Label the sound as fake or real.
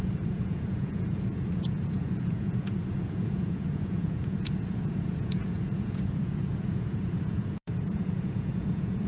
fake